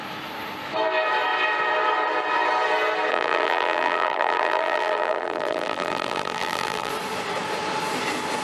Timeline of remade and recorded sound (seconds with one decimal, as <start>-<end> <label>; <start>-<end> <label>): 0.0-3.1 recorded; 3.1-6.9 remade; 6.9-8.4 recorded